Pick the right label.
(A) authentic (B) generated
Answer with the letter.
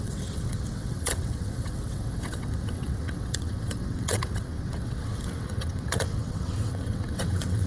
B